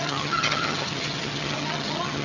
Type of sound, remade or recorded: remade